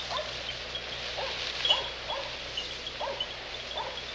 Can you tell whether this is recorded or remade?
recorded